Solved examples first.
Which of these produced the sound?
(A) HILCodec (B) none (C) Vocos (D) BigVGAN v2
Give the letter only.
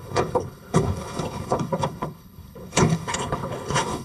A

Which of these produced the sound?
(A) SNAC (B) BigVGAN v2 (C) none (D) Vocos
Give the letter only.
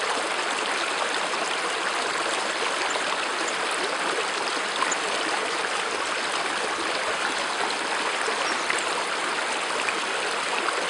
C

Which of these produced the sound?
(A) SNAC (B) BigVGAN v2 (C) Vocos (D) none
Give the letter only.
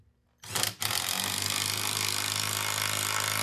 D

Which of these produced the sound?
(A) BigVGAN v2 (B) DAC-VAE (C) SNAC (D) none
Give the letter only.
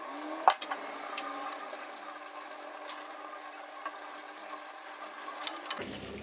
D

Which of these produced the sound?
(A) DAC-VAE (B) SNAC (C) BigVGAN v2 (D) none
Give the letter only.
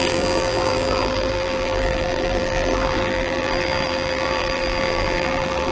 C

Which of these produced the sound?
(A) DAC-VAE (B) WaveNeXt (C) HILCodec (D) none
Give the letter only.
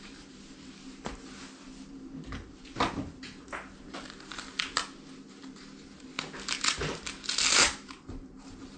D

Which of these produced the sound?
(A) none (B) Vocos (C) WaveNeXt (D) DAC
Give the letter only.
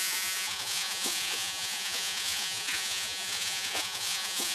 B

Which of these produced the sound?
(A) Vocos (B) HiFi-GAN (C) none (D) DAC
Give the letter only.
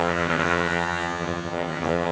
B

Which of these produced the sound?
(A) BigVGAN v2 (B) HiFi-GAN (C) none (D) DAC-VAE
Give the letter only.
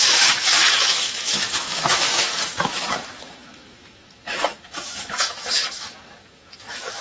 D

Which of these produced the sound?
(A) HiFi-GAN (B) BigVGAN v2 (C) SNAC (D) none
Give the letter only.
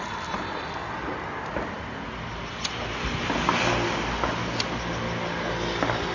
D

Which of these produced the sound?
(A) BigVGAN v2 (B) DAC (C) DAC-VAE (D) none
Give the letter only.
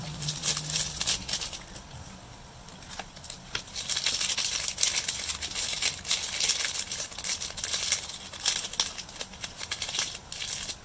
D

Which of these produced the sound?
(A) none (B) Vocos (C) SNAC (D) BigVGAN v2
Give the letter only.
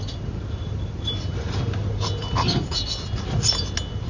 A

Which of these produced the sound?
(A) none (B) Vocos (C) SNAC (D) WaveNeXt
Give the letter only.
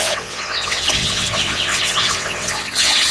D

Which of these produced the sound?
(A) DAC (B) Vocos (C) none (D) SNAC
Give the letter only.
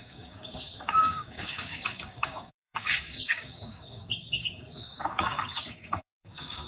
A